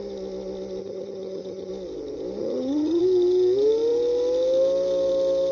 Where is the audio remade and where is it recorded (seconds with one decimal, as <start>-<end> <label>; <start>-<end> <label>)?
0.0-0.8 recorded; 0.8-1.7 remade; 1.7-2.4 recorded; 2.4-3.0 remade; 3.0-5.5 recorded